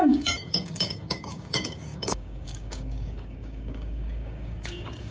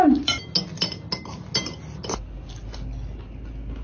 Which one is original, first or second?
second